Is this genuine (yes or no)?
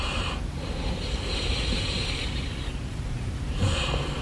no